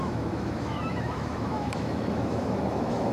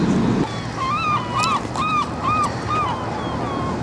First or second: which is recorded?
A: second